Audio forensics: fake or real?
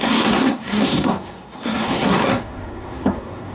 fake